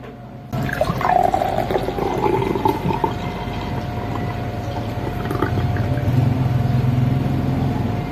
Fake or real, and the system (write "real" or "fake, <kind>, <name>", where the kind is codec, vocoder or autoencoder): real